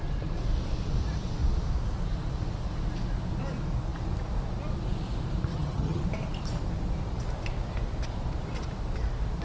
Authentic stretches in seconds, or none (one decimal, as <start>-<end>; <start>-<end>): 0.0-5.5; 6.0-9.4